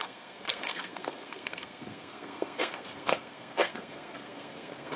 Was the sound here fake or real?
fake